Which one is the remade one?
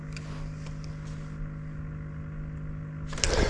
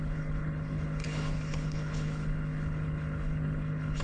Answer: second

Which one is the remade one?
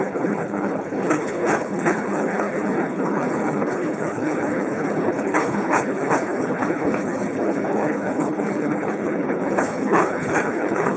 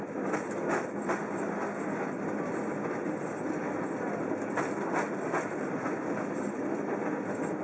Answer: first